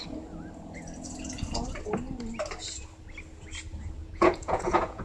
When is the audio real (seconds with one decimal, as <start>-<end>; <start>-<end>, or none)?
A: 0.0-4.0